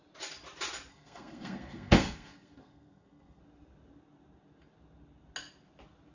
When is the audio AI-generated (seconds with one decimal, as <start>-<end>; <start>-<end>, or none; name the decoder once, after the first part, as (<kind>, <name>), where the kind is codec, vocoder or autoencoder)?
0.9-3.4 (codec, SNAC)